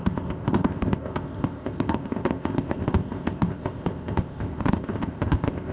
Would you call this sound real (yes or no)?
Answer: no